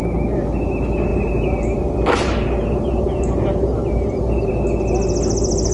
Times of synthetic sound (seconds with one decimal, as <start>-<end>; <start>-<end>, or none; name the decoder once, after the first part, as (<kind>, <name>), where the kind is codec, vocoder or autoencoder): 1.1-4.5 (vocoder, BigVGAN v2)